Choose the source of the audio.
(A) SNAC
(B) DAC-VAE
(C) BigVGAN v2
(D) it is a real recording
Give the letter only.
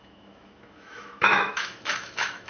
B